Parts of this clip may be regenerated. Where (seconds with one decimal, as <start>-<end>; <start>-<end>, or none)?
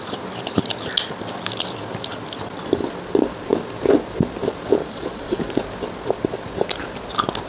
4.8-5.4